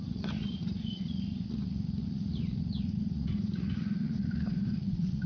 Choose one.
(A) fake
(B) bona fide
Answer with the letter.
A